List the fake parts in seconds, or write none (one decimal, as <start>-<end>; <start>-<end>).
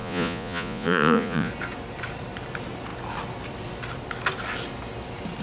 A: 0.0-1.5